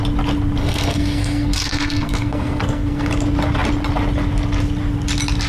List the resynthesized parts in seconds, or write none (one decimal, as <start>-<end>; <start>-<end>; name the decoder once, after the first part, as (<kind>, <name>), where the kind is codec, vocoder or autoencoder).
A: 0.6-3.1 (codec, SNAC)